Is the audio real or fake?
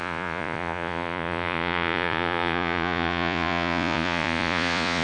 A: fake